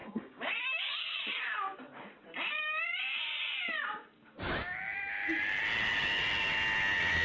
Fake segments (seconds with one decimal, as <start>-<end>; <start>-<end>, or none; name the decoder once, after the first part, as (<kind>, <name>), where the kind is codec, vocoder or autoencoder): 0.0-0.8 (codec, DAC)